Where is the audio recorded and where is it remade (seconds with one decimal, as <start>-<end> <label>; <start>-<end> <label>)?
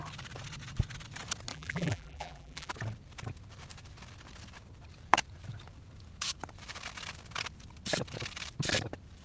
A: 0.0-1.5 recorded; 1.5-2.7 remade; 2.7-9.2 recorded